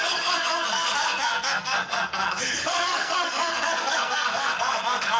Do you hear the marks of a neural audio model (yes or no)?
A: yes